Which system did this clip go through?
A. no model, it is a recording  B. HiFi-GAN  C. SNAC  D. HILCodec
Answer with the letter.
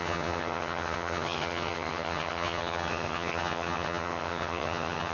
B